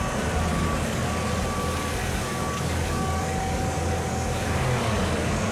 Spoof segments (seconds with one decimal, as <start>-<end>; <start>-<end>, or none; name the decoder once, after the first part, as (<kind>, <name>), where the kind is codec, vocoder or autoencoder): 0.5-1.3 (codec, DAC); 2.0-5.5